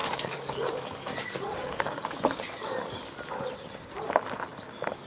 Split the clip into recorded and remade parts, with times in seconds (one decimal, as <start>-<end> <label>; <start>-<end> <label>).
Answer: 0.0-3.0 remade; 3.0-5.1 recorded